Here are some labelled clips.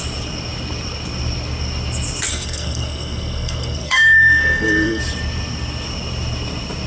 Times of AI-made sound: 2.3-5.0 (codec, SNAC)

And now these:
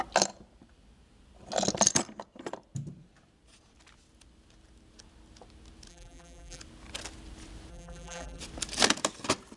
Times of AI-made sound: 5.9-6.6 (vocoder, BigVGAN v2); 7.7-8.4

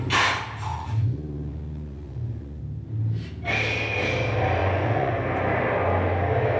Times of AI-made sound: 0.7-2.6 (vocoder, Vocos); 4.6-5.1

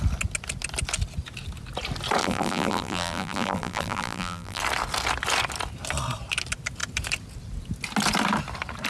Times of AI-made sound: 2.2-4.6 (vocoder, BigVGAN v2)

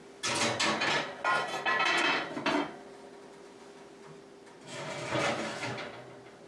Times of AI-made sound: none

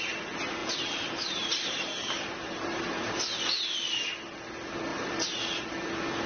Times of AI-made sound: 0.6-3.4 (vocoder, BigVGAN v2); 4.9-5.7

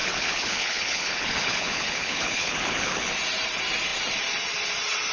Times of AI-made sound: 0.0-3.1 (codec, HILCodec)

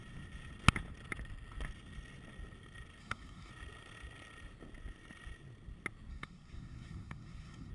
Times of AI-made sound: 3.0-3.5 (codec, SNAC); 6.1-7.7